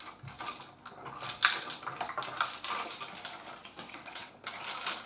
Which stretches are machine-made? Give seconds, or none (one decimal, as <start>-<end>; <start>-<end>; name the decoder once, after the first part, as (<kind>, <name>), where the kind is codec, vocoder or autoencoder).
3.6-4.3 (vocoder, WaveNeXt)